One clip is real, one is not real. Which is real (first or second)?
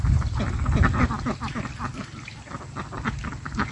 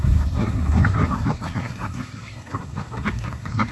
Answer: first